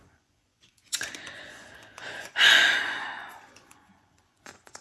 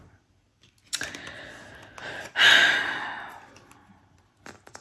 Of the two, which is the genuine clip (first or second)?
second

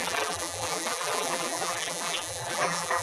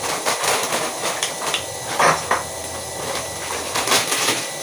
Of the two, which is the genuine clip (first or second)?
second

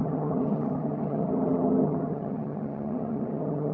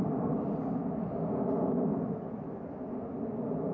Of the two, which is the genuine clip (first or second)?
second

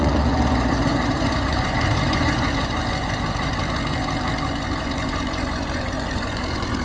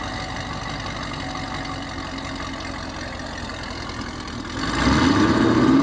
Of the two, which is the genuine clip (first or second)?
second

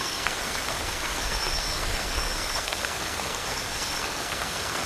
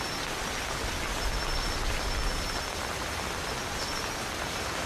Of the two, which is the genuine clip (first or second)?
second